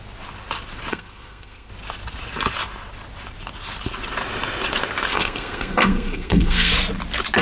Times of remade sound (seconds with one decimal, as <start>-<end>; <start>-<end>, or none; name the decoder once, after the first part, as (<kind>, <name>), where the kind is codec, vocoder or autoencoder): 0.9-1.7 (codec, SNAC); 5.1-6.7